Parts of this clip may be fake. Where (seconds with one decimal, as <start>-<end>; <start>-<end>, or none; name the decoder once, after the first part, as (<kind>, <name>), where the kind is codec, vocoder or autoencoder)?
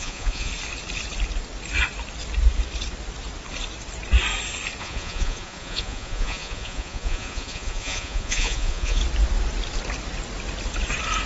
0.0-0.5 (vocoder, Vocos); 4.8-9.0